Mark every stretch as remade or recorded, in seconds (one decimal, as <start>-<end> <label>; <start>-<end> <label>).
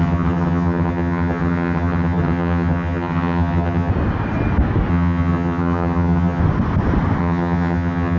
0.0-3.9 remade; 3.9-4.9 recorded; 4.9-6.4 remade; 6.4-7.2 recorded; 7.2-8.2 remade